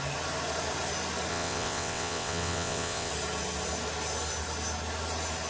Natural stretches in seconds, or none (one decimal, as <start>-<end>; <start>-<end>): 0.0-1.3; 3.1-5.5